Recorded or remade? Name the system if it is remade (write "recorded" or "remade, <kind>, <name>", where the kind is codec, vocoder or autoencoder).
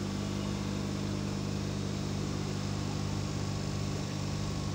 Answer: remade, vocoder, BigVGAN v2